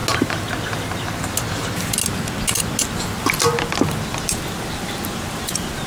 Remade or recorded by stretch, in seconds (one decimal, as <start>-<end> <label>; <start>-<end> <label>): 0.0-5.9 recorded